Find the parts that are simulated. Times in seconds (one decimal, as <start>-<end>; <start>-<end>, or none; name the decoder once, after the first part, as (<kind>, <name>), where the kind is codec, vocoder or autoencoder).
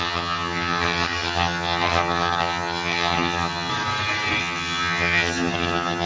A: 0.0-3.7 (vocoder, HiFi-GAN); 4.4-6.1